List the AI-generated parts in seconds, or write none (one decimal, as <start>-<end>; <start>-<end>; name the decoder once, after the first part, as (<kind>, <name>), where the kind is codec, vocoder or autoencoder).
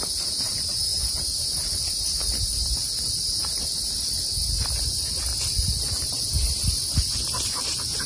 5.3-6.2 (vocoder, BigVGAN v2)